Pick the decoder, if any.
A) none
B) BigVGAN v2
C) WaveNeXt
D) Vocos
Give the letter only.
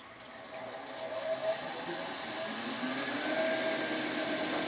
A